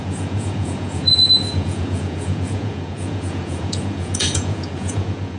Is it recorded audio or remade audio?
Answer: remade